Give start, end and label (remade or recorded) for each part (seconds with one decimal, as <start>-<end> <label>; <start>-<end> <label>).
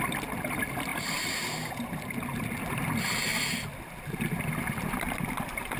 0.0-5.8 recorded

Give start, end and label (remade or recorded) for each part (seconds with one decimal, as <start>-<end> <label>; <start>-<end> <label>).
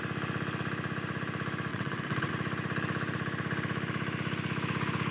0.0-1.7 recorded; 1.7-2.3 remade; 2.3-5.1 recorded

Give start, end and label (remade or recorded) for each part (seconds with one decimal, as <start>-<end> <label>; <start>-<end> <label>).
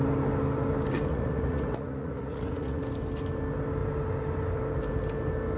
0.0-1.1 recorded; 1.1-2.8 remade; 2.8-5.6 recorded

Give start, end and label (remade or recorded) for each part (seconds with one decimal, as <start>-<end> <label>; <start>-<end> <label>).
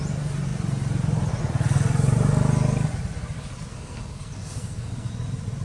0.0-3.7 recorded; 3.7-5.1 remade; 5.1-5.6 recorded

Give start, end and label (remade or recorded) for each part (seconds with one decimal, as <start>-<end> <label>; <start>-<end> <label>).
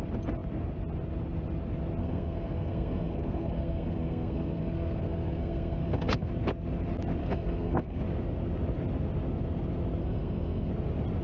0.0-2.0 recorded; 2.0-6.3 remade; 6.3-7.2 recorded; 7.2-8.0 remade; 8.0-10.0 recorded; 10.0-10.7 remade; 10.7-11.2 recorded